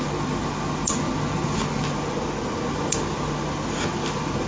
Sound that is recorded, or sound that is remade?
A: recorded